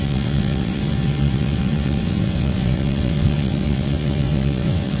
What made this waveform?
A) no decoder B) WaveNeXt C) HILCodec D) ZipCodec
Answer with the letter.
B